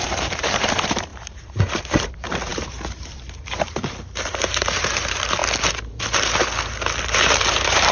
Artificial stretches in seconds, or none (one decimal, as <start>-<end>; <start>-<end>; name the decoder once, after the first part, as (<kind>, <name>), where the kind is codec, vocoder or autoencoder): 0.0-5.4 (vocoder, BigVGAN v2); 7.0-7.9